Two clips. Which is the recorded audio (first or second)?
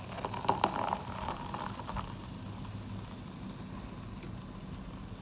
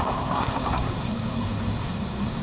first